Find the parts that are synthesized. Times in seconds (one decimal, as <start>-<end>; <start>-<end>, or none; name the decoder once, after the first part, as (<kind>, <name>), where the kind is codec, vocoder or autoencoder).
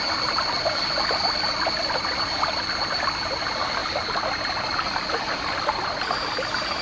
none